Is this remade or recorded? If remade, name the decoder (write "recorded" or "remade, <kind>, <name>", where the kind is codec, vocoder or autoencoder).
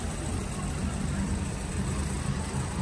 remade, vocoder, BigVGAN v2